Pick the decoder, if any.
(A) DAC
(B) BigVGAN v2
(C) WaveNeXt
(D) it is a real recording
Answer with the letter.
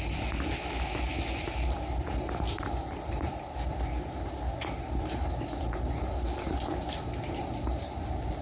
D